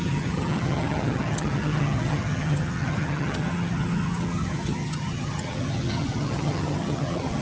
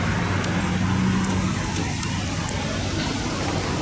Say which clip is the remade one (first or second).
first